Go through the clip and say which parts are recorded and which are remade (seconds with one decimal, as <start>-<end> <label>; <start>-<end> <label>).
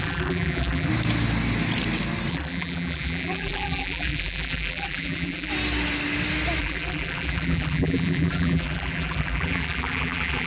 0.0-0.9 remade; 0.9-2.3 recorded; 2.3-5.5 remade; 5.5-6.6 recorded; 6.6-10.5 remade